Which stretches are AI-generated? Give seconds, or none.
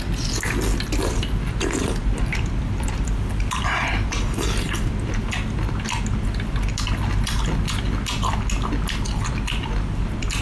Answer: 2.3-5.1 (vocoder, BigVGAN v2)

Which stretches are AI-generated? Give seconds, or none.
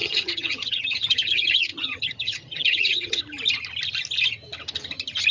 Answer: 0.0-3.2 (vocoder, HiFi-GAN)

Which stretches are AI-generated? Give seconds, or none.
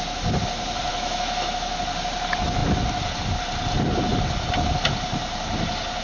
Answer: 0.9-1.8 (autoencoder, DAC-VAE)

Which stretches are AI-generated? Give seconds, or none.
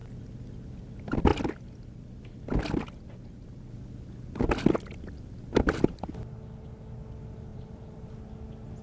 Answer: 7.5-8.1 (vocoder, BigVGAN v2)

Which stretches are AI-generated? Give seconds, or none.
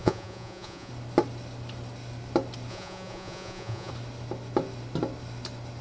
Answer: 0.0-0.9 (vocoder, Vocos); 2.7-3.9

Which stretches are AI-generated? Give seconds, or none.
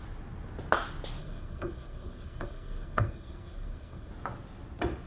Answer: 1.2-4.1 (codec, SNAC)